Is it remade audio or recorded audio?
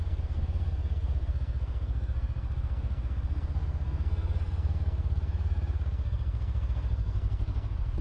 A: remade